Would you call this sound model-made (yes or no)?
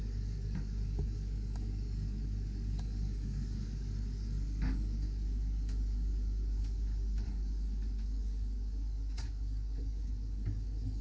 yes